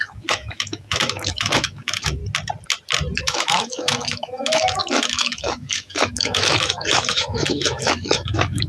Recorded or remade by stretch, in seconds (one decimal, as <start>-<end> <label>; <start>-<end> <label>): 0.0-2.2 remade; 2.2-3.2 recorded; 3.2-8.7 remade